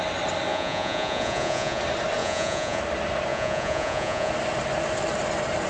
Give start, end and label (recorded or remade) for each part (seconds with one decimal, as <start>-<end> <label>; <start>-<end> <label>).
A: 0.0-0.5 recorded; 0.5-1.8 remade; 1.8-2.2 recorded; 2.2-2.8 remade; 2.8-3.3 recorded; 3.3-4.3 remade; 4.3-5.7 recorded